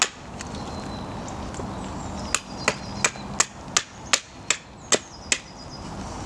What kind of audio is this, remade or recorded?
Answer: recorded